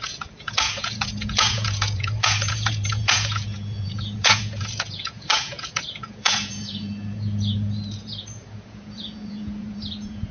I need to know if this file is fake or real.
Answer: fake